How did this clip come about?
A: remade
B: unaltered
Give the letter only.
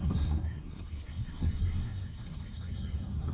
A